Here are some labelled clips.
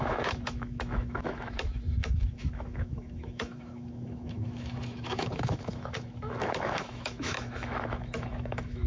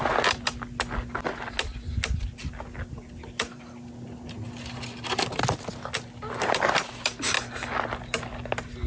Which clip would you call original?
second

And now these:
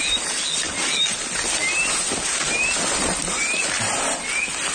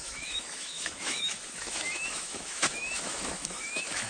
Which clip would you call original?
first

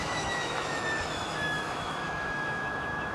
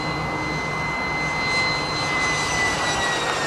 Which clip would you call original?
second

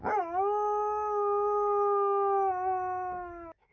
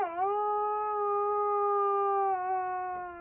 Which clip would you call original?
second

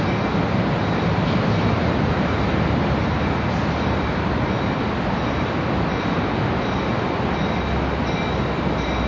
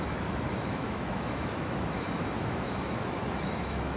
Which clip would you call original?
first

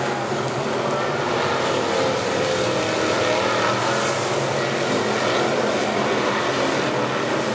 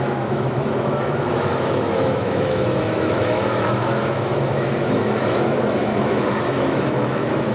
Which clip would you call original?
first